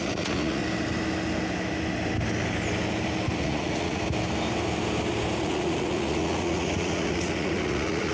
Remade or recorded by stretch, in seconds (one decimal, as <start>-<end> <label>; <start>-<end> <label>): 0.0-0.6 remade; 0.6-3.4 recorded; 3.4-4.0 remade; 4.0-5.4 recorded; 5.4-8.1 remade

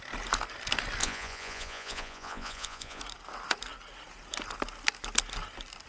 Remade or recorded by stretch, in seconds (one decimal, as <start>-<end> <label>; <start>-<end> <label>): 0.0-1.0 recorded; 1.0-3.0 remade; 3.0-5.9 recorded

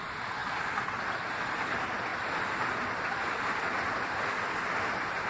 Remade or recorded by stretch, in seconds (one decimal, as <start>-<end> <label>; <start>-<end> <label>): 0.0-5.3 recorded

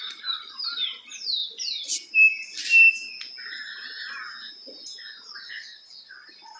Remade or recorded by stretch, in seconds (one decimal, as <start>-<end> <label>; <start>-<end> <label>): 0.0-6.6 recorded

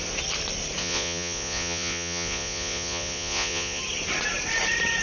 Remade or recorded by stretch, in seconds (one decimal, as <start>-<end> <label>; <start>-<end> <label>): 0.0-0.8 recorded; 0.8-3.8 remade; 3.8-5.0 recorded

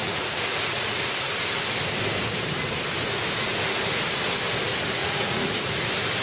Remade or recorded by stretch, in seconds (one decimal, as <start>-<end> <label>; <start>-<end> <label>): 0.0-1.1 remade; 1.1-5.0 recorded; 5.0-5.7 remade; 5.7-6.2 recorded

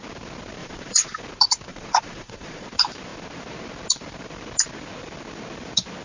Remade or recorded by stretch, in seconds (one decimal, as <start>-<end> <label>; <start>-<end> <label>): 0.0-0.6 recorded; 0.6-1.2 remade; 1.2-1.7 recorded; 1.7-2.7 remade; 2.7-6.0 recorded

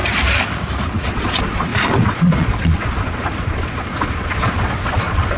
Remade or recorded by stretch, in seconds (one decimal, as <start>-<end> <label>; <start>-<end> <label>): 0.0-0.9 recorded; 0.9-5.4 remade